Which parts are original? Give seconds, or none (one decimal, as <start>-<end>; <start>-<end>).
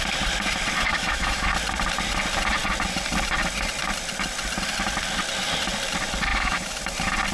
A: 0.0-0.9; 1.5-6.3; 6.8-7.3